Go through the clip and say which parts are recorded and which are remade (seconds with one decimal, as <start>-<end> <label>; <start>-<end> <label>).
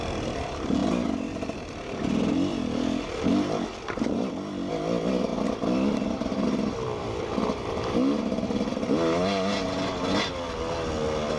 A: 0.0-5.3 recorded; 5.3-8.9 remade; 8.9-11.4 recorded